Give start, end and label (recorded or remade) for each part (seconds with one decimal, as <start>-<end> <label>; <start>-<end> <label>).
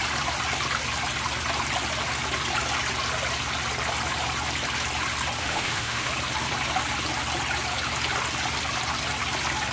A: 0.0-5.4 recorded; 5.4-6.1 remade; 6.1-9.7 recorded